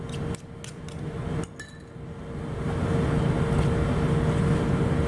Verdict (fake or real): real